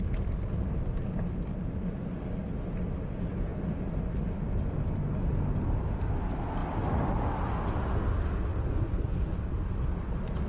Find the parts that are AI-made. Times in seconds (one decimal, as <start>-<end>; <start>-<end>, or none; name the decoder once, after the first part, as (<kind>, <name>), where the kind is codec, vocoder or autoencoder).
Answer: 8.5-10.1 (vocoder, BigVGAN v2)